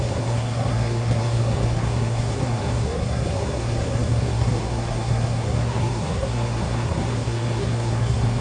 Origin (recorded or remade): remade